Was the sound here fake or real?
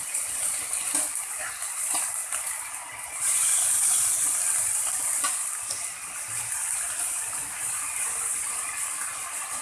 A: real